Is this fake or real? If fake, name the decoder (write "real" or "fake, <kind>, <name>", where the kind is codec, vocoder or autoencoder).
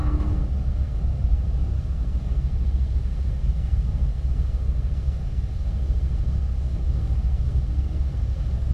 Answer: fake, codec, SNAC